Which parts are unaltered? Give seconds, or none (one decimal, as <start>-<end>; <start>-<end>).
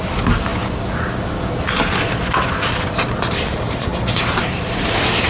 0.0-5.3